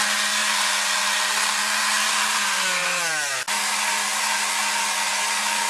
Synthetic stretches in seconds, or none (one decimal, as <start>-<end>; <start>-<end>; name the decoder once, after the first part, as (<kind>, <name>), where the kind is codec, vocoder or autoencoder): none